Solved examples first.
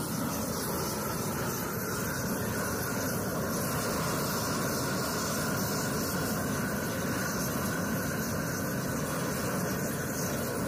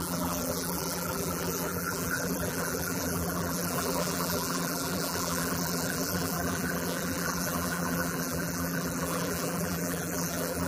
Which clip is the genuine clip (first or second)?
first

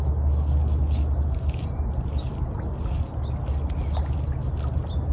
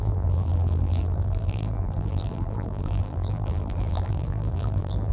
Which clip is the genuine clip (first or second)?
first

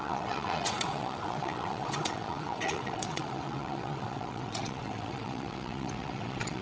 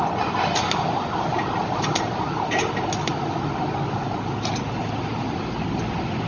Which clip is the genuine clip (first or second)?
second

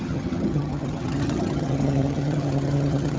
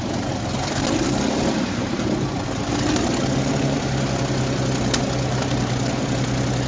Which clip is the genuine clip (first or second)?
second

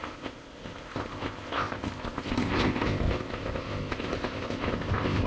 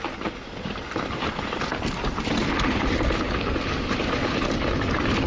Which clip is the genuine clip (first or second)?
second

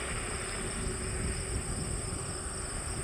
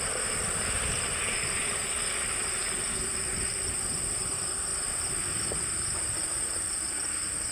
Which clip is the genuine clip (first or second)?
first